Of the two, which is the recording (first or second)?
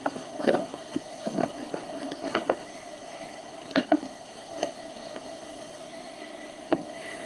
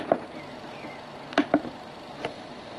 second